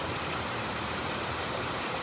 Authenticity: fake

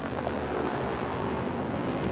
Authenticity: fake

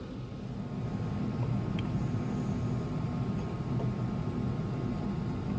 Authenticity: real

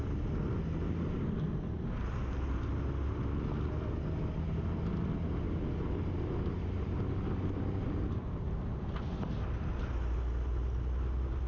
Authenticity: real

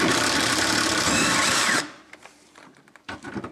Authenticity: fake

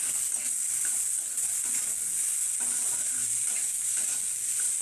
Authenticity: real